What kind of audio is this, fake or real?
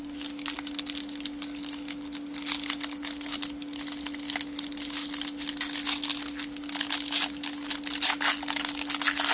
real